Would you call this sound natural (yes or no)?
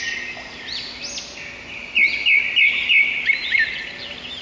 yes